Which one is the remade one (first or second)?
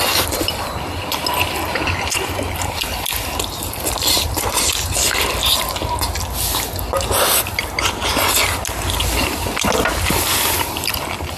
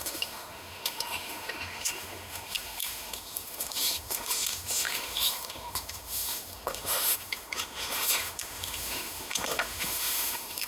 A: second